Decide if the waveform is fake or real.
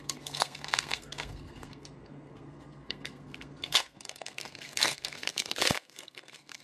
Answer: fake